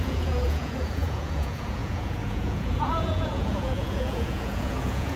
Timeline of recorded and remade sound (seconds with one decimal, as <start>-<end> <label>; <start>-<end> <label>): 0.0-5.2 remade